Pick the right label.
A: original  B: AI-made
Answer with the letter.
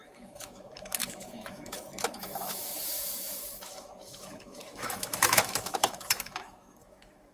B